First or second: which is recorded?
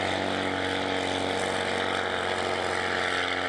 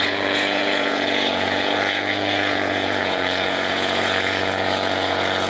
first